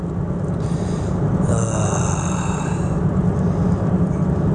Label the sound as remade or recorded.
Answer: recorded